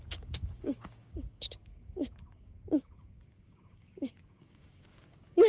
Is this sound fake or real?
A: fake